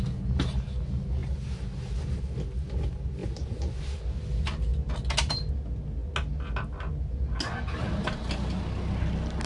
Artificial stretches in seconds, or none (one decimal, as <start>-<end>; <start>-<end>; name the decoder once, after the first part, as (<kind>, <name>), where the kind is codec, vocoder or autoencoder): 1.2-2.2 (vocoder, BigVGAN v2); 3.2-4.0

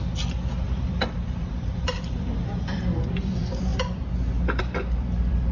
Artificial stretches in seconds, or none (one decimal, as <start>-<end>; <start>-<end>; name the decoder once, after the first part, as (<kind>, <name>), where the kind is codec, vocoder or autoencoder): 0.0-3.7 (vocoder, BigVGAN v2); 4.6-5.5

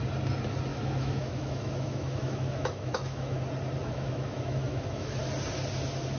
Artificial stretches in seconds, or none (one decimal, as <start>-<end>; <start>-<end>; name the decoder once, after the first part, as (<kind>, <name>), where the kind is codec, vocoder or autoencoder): 0.7-3.4 (autoencoder, DAC-VAE); 3.8-5.2

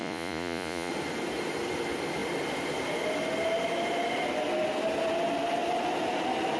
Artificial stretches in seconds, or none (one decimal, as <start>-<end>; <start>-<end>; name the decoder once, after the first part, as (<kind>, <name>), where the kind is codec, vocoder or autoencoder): 0.0-0.9 (vocoder, Vocos)

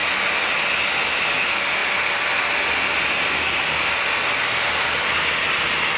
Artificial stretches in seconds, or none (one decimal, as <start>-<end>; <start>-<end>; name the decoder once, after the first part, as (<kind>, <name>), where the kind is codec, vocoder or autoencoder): none

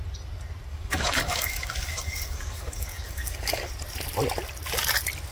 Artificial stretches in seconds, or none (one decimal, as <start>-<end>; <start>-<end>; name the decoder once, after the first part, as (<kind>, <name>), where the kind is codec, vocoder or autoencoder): 0.7-3.7 (codec, DAC)